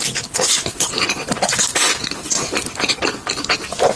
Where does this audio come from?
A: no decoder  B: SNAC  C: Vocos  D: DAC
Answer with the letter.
A